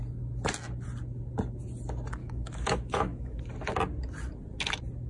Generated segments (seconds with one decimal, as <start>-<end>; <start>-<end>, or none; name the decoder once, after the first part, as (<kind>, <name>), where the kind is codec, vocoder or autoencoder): 2.2-3.4 (autoencoder, DAC-VAE)